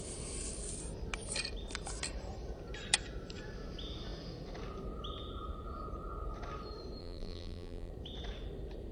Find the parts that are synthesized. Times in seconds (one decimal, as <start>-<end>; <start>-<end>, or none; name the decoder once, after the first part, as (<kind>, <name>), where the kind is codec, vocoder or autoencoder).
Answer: 7.0-7.9 (vocoder, BigVGAN v2)